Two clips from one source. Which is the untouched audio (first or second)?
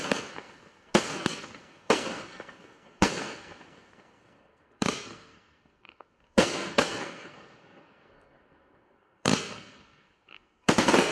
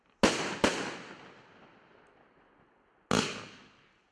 second